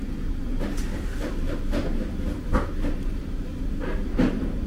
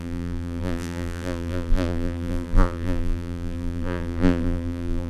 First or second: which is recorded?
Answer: first